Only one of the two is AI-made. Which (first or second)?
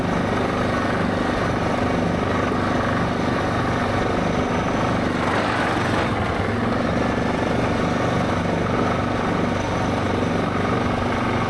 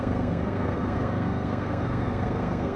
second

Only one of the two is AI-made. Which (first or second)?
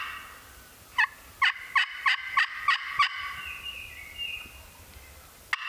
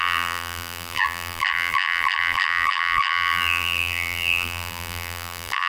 second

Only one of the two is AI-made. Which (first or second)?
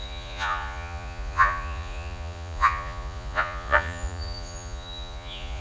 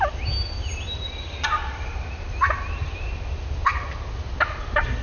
first